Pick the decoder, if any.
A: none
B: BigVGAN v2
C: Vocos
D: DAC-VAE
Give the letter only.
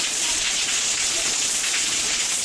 C